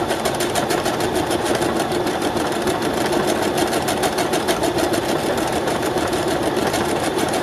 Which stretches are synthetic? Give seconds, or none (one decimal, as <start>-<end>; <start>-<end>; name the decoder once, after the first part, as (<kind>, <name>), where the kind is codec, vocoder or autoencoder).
0.0-1.5 (vocoder, BigVGAN v2); 5.3-7.4